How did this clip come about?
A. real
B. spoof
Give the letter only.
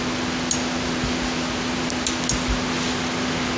A